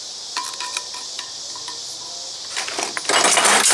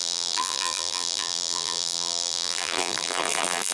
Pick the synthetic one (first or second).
second